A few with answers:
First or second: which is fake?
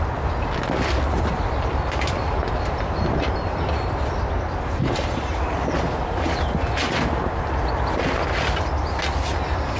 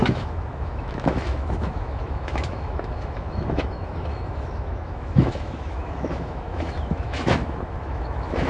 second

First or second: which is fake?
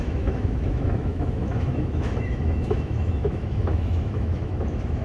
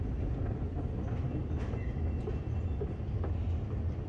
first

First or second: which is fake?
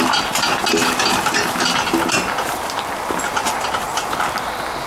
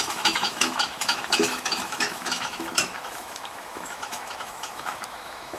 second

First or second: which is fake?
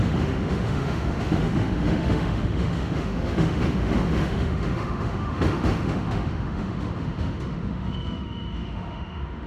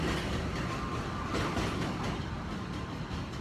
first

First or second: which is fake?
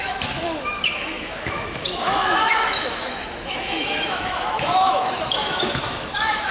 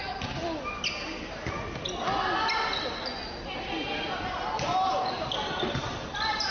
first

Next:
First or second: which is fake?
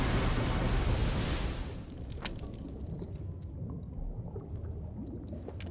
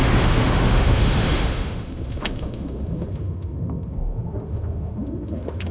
second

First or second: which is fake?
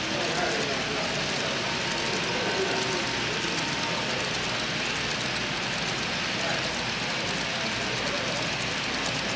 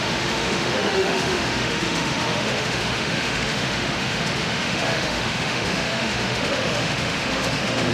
second